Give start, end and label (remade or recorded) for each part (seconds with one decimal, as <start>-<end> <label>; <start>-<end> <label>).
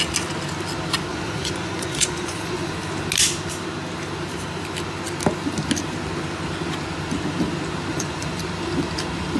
0.0-1.1 recorded; 1.1-2.7 remade; 2.7-7.9 recorded; 7.9-8.4 remade; 8.4-9.4 recorded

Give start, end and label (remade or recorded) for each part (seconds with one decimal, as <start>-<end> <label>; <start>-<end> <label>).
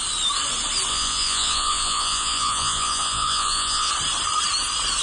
0.0-0.9 recorded; 0.9-3.9 remade; 3.9-5.0 recorded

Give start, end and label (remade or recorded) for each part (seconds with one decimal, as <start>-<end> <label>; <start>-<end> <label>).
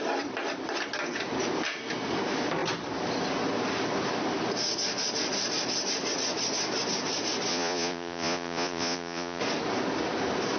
0.0-7.5 recorded; 7.5-9.4 remade; 9.4-10.6 recorded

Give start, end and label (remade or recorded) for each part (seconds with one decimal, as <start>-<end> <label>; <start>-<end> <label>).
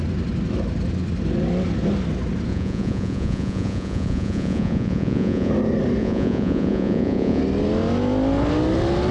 0.0-2.5 recorded; 2.5-5.5 remade; 5.5-6.0 recorded; 6.0-7.4 remade; 7.4-9.1 recorded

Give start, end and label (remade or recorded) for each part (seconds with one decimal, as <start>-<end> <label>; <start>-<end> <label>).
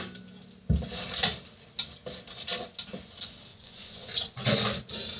0.0-3.5 recorded; 3.5-4.8 remade; 4.8-5.2 recorded